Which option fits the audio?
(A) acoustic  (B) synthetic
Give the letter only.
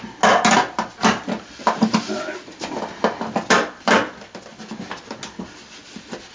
A